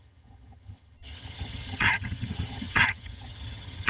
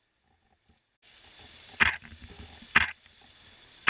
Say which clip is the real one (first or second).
second